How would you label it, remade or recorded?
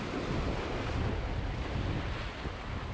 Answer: recorded